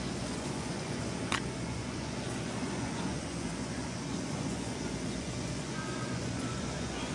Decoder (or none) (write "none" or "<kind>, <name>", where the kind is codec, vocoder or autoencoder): vocoder, Vocos